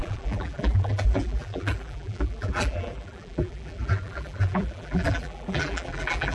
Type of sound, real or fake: fake